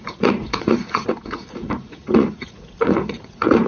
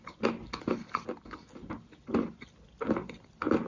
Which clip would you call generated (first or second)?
first